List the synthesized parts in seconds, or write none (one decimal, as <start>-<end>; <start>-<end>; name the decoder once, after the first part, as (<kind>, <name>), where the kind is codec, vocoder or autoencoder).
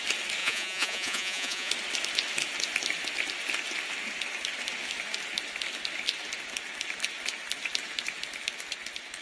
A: 0.4-1.7 (vocoder, Vocos)